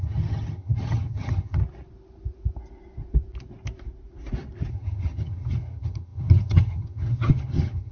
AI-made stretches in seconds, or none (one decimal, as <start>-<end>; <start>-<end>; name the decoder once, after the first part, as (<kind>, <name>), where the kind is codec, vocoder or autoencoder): 0.0-1.6 (vocoder, HiFi-GAN); 4.7-7.9